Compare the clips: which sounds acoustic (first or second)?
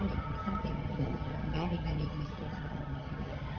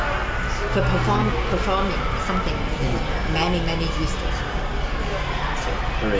second